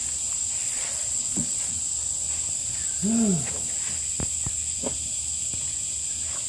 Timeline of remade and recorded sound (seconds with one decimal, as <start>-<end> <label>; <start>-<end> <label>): 0.0-0.6 recorded; 0.6-1.8 remade; 1.8-6.5 recorded